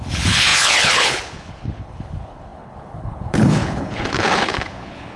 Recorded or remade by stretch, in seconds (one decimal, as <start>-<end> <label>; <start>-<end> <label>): 0.0-5.2 remade